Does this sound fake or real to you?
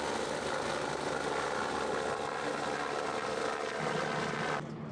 real